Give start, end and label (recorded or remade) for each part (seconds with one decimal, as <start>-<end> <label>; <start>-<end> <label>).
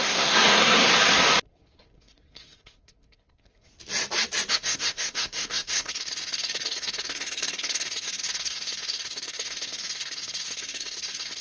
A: 0.0-0.9 remade; 0.9-1.4 recorded; 1.4-3.7 remade; 3.7-4.5 recorded; 4.5-11.4 remade